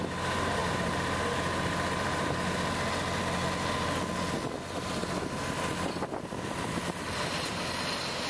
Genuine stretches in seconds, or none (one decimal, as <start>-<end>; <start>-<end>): 0.0-0.6; 1.2-8.3